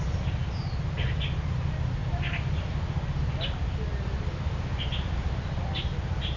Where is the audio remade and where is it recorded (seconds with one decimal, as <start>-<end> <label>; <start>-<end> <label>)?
0.0-6.4 recorded